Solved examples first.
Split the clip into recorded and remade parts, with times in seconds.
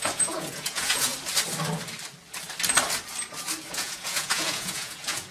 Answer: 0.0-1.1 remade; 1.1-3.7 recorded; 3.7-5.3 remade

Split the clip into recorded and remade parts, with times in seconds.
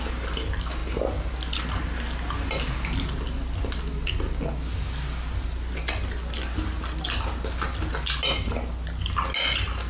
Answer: 0.0-9.9 recorded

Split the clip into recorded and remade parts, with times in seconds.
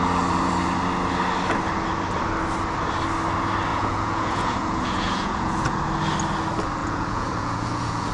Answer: 0.0-3.7 recorded; 3.7-5.8 remade; 5.8-6.8 recorded; 6.8-8.1 remade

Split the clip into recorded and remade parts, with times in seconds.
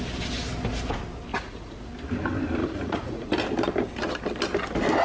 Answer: 0.0-1.3 recorded; 1.3-1.9 remade; 1.9-2.6 recorded; 2.6-3.3 remade; 3.3-5.0 recorded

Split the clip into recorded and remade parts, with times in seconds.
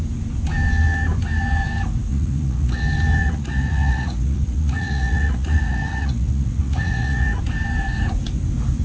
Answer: 0.0-2.1 recorded; 2.1-2.8 remade; 2.8-3.2 recorded; 3.2-7.4 remade; 7.4-8.8 recorded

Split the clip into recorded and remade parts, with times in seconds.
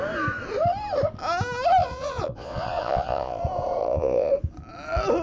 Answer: 0.0-1.8 recorded; 1.8-3.4 remade; 3.4-3.8 recorded; 3.8-4.3 remade; 4.3-5.2 recorded